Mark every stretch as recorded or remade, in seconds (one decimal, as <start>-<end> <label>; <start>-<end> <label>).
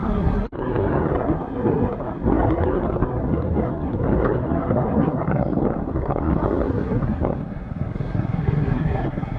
0.0-9.4 remade